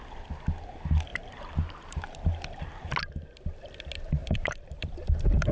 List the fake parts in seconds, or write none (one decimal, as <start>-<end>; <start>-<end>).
1.1-2.9; 4.2-5.5